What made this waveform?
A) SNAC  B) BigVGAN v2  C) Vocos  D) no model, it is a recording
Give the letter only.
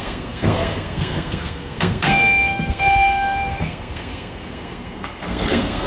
A